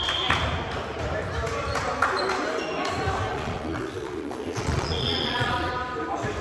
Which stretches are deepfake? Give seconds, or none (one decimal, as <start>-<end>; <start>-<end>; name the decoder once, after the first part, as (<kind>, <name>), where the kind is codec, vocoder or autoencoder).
3.3-5.7 (vocoder, Vocos)